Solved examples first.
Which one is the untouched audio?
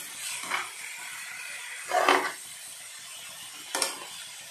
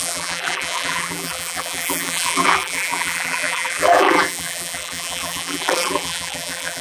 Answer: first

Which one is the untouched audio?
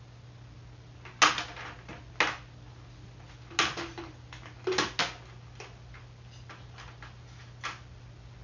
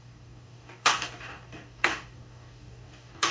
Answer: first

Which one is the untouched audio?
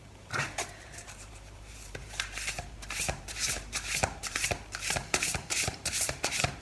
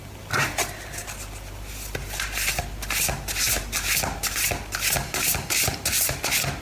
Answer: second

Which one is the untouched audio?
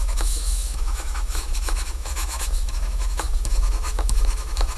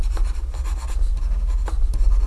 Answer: second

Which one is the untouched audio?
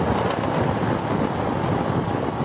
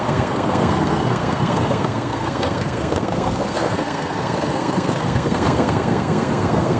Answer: first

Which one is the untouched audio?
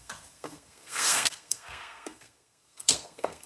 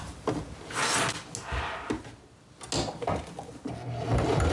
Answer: second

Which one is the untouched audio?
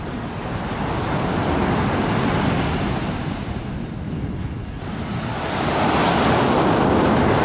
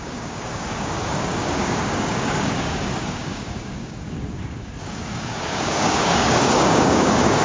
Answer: first